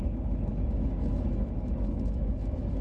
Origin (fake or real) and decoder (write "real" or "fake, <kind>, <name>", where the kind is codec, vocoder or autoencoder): fake, autoencoder, DAC-VAE